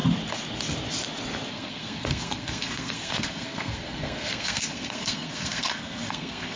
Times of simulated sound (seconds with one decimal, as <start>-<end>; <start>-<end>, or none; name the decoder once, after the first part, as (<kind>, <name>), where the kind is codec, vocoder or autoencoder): 1.5-6.6 (codec, SNAC)